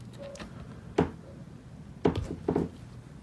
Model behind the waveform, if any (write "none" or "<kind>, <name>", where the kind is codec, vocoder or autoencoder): none